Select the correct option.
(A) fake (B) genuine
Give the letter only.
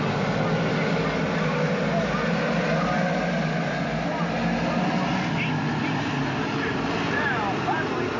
B